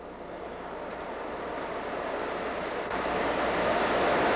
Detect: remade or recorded recorded